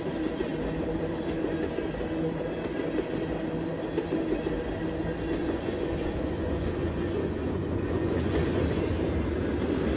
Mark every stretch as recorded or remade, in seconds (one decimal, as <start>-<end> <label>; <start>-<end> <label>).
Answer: 0.0-5.4 recorded; 5.4-8.8 remade; 8.8-10.0 recorded